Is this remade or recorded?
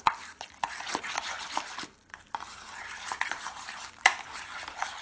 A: recorded